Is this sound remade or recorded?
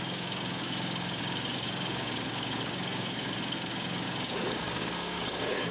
remade